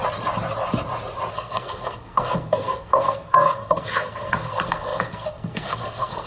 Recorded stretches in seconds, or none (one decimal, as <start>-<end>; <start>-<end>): 0.0-1.3